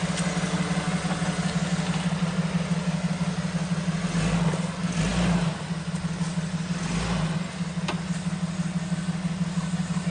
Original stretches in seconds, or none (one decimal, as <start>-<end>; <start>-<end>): 0.0-10.1